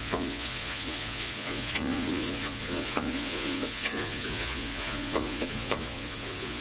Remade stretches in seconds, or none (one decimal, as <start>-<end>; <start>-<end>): 0.0-6.6